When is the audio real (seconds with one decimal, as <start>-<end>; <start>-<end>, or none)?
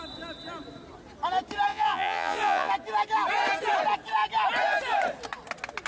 0.0-1.7; 2.7-5.9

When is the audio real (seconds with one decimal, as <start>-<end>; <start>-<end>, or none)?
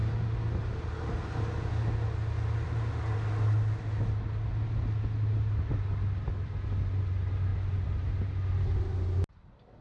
0.0-9.8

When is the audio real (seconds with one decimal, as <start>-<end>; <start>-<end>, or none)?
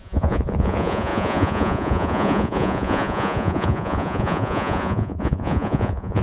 none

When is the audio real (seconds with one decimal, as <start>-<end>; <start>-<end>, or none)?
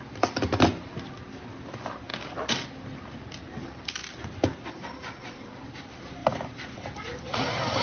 0.0-7.8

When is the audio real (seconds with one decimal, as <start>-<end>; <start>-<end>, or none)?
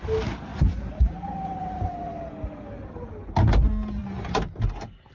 0.0-5.1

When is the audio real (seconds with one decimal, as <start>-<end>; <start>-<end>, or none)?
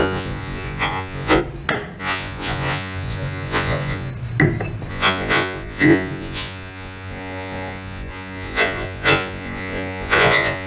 1.4-2.0; 4.1-4.9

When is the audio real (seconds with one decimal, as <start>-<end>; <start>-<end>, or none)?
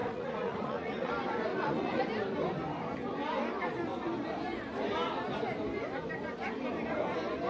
1.1-1.5; 2.0-7.5